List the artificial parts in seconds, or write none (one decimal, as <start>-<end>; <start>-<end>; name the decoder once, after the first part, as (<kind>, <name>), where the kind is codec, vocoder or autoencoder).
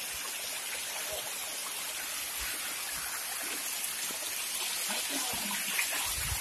none